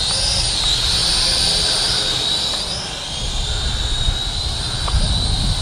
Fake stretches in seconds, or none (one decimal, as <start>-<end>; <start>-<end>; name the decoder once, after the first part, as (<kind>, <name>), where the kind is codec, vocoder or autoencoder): none